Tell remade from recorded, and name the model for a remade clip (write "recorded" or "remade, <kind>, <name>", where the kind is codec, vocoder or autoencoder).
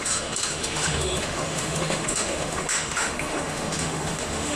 remade, autoencoder, DAC-VAE